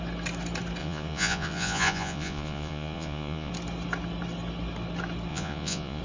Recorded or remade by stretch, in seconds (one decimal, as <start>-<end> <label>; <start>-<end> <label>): 0.0-0.8 recorded; 0.8-3.5 remade; 3.5-5.3 recorded; 5.3-6.0 remade